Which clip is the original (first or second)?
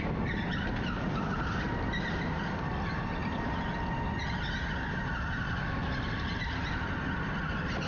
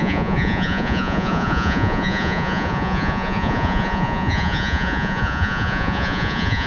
first